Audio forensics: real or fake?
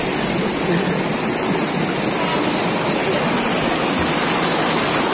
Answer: real